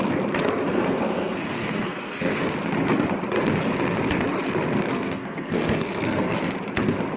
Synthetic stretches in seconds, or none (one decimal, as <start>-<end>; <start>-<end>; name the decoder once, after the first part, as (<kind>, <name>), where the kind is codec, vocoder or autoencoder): 0.7-2.4 (codec, SNAC); 4.9-6.4